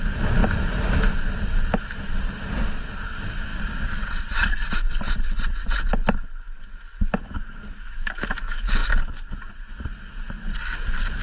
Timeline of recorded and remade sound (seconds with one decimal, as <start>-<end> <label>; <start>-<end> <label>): 0.0-3.5 recorded; 3.5-4.7 remade; 4.7-11.2 recorded